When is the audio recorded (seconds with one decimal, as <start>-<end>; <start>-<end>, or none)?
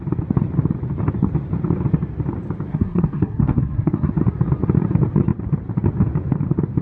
0.0-2.7; 4.1-6.8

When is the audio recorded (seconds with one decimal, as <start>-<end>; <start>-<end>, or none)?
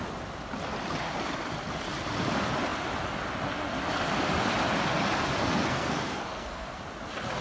0.0-5.6; 6.8-7.4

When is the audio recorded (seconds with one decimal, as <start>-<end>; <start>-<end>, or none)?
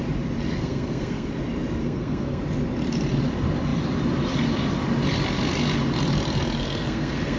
0.0-0.6; 1.3-1.8; 2.4-6.6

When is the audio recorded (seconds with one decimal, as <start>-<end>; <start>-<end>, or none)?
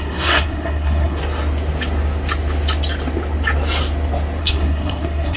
1.2-4.4